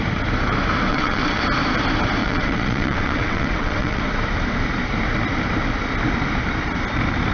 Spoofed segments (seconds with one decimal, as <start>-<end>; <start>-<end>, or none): 0.9-1.4; 2.2-4.0